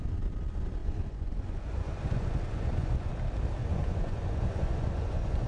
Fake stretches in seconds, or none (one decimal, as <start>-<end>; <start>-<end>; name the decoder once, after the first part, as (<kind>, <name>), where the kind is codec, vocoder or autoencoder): 0.8-3.1 (vocoder, Vocos); 3.6-5.5